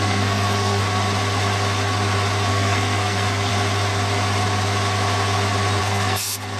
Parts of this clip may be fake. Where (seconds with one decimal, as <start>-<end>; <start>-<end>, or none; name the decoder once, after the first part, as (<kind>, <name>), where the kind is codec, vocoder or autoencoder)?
0.0-0.8 (codec, SNAC); 2.5-3.5; 5.8-6.6